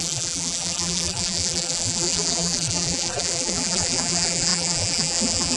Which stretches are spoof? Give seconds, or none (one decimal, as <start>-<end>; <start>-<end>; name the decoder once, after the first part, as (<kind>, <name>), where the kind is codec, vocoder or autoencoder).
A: 0.0-5.6 (vocoder, BigVGAN v2)